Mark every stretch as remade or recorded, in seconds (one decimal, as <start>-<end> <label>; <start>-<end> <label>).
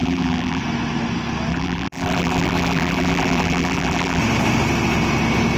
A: 0.0-0.6 remade; 0.6-1.5 recorded; 1.5-4.2 remade; 4.2-5.6 recorded